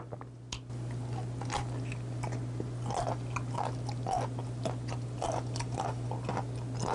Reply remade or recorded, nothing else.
recorded